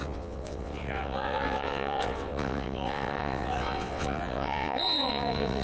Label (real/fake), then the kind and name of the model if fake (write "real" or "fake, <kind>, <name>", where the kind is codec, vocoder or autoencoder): fake, vocoder, WaveNeXt